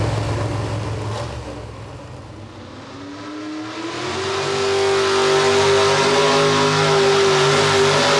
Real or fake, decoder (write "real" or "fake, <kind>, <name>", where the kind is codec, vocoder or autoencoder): real